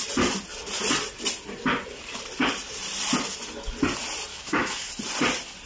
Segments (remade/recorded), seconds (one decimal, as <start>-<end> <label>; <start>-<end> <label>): 0.0-4.3 recorded; 4.3-4.9 remade; 4.9-5.7 recorded